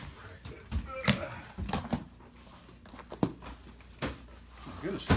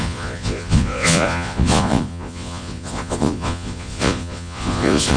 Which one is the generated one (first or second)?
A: second